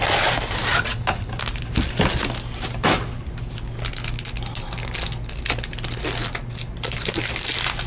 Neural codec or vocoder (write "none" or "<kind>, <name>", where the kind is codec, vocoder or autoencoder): none